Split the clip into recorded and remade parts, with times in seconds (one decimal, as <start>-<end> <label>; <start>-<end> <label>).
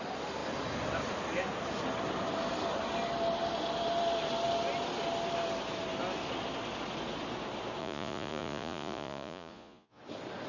0.0-7.8 recorded; 7.8-10.0 remade; 10.0-10.5 recorded